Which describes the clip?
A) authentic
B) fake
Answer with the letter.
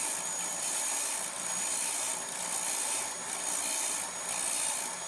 A